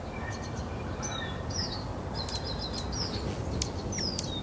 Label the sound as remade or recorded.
recorded